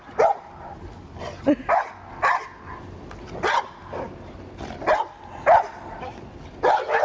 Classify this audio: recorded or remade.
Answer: recorded